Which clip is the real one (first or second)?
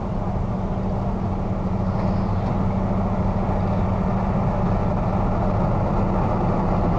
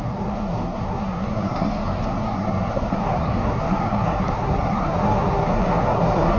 first